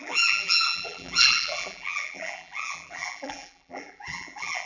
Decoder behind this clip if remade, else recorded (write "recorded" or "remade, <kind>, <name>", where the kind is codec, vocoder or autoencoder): remade, vocoder, BigVGAN v2